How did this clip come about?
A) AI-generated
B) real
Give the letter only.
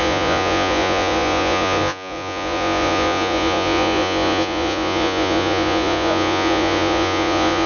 A